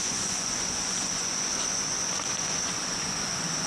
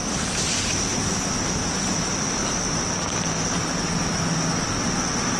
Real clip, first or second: second